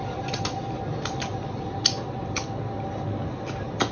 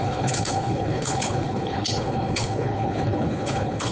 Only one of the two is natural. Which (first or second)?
first